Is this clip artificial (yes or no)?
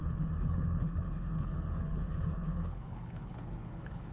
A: yes